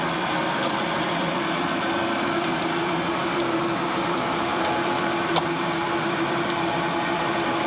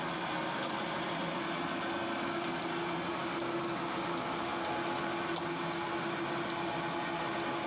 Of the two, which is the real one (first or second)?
second